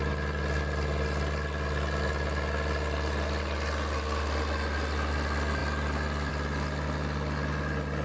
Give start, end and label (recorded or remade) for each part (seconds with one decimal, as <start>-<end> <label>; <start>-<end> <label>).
0.0-8.0 recorded